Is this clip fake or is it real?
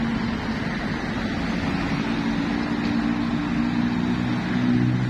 real